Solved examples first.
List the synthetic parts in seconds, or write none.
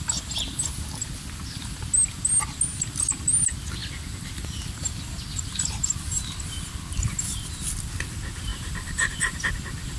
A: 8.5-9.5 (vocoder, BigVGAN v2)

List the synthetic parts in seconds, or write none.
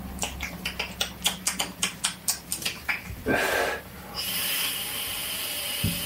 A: 2.5-4.3 (vocoder, BigVGAN v2)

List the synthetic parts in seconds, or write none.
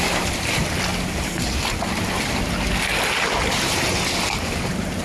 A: none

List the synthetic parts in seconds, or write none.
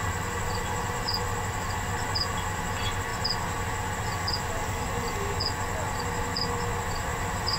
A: 7.1-7.6 (vocoder, BigVGAN v2)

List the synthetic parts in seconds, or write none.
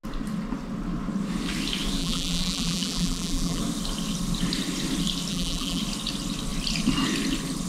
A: 2.0-3.6 (vocoder, BigVGAN v2); 5.3-5.8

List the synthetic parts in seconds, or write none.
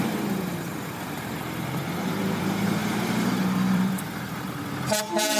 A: 0.0-5.4 (vocoder, BigVGAN v2)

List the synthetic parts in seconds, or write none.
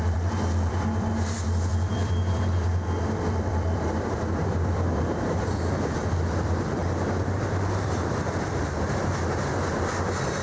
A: 0.0-6.8 (vocoder, BigVGAN v2); 7.3-10.4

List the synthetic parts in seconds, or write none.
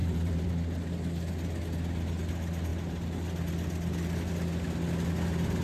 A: 0.0-0.5 (vocoder, BigVGAN v2)